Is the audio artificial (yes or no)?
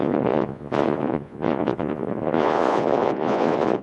yes